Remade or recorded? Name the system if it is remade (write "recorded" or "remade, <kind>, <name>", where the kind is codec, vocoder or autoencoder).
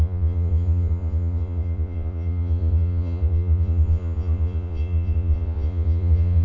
remade, vocoder, Vocos